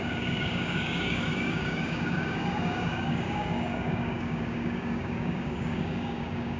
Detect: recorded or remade remade